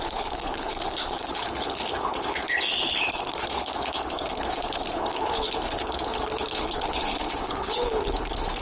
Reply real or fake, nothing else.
fake